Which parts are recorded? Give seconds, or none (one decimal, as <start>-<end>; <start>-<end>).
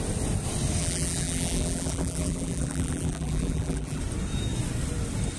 0.0-0.8; 4.0-5.4